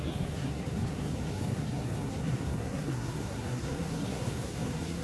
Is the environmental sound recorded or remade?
remade